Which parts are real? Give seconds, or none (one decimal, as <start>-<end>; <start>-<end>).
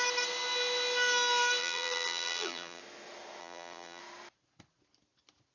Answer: 0.0-1.6; 2.8-3.4; 4.0-5.5